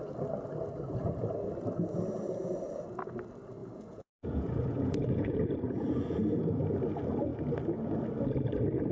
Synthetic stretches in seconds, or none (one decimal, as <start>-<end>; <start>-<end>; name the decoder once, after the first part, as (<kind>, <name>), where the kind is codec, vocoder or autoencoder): 3.6-6.6 (vocoder, Vocos)